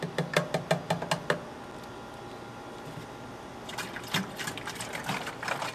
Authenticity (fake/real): real